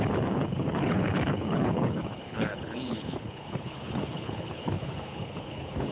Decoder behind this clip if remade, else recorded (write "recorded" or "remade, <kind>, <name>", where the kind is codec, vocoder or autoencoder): remade, codec, HILCodec